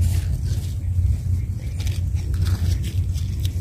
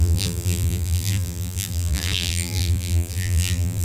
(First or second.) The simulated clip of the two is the second